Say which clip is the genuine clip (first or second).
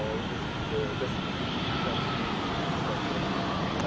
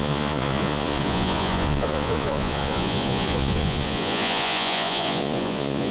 first